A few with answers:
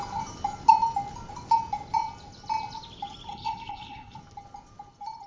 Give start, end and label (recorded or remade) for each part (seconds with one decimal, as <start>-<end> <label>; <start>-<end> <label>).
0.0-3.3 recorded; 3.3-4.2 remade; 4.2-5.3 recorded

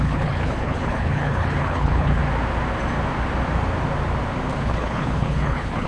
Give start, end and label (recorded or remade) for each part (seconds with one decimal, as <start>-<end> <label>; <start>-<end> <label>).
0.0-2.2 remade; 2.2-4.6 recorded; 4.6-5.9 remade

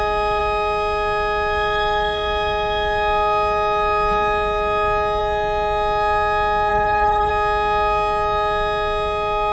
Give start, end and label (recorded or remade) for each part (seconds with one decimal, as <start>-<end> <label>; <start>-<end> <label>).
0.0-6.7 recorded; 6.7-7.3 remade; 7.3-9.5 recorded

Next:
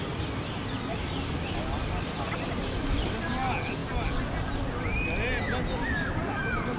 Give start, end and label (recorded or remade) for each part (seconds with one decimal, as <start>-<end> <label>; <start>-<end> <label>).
0.0-6.8 recorded

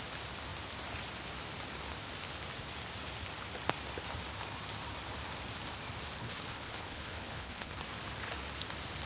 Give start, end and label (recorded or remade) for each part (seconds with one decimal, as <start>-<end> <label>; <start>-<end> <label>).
0.0-6.2 recorded; 6.2-7.8 remade; 7.8-9.1 recorded

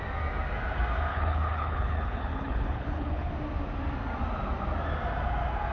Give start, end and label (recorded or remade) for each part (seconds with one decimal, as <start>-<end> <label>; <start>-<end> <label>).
0.0-1.1 recorded; 1.1-3.3 remade; 3.3-5.7 recorded